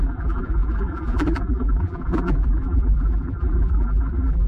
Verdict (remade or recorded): remade